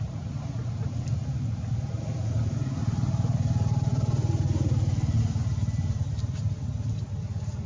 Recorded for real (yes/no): yes